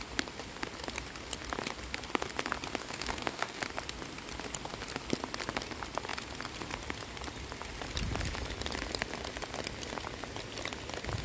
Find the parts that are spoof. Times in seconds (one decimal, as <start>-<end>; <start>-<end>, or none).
2.8-3.6